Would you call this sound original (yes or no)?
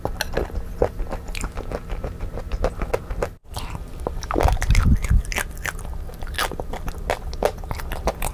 yes